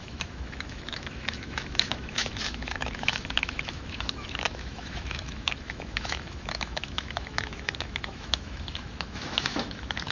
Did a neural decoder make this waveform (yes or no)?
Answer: yes